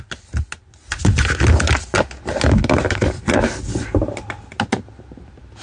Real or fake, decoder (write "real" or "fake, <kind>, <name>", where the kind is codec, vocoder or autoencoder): real